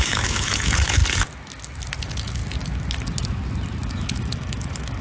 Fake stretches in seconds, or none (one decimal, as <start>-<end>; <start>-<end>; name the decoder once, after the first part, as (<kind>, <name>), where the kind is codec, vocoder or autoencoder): 0.0-1.0 (autoencoder, DAC-VAE); 2.0-2.4; 3.9-5.0